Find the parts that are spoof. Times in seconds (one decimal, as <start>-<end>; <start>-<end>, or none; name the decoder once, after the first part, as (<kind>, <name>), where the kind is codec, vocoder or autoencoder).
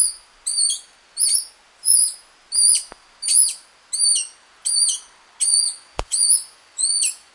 5.5-7.3 (vocoder, Vocos)